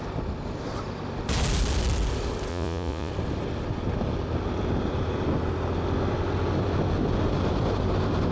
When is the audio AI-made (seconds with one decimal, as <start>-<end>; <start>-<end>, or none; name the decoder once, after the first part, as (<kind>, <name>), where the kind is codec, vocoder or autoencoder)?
2.5-3.1 (vocoder, Vocos)